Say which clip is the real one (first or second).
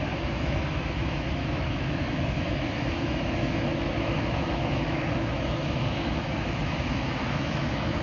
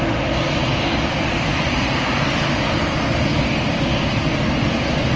second